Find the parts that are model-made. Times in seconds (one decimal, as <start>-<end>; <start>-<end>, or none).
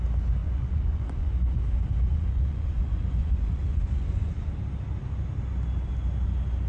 0.4-1.6; 2.1-4.4